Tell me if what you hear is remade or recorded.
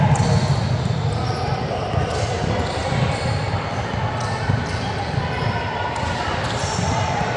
remade